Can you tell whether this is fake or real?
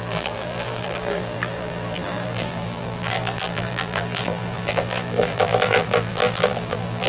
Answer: fake